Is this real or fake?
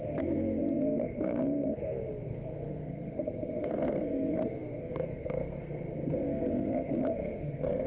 fake